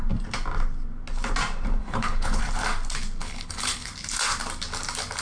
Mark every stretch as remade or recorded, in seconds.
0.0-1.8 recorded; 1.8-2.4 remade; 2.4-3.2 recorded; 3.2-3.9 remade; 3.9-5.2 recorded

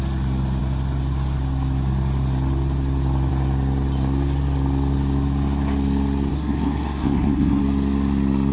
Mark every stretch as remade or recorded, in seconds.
0.0-6.3 recorded; 6.3-7.6 remade; 7.6-8.5 recorded

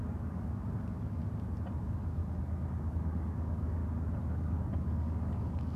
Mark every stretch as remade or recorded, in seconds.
0.0-1.2 remade; 1.2-1.8 recorded; 1.8-2.2 remade; 2.2-2.9 recorded; 2.9-3.8 remade; 3.8-4.3 recorded; 4.3-5.8 remade